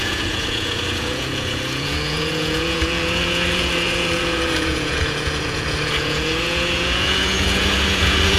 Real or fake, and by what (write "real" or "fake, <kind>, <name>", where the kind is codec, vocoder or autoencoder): fake, vocoder, Vocos